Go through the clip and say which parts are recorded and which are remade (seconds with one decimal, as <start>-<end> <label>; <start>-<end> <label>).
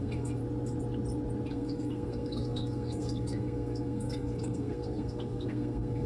0.0-0.4 remade; 0.4-1.5 recorded; 1.5-6.1 remade